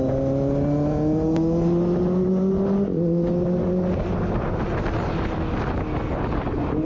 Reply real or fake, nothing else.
real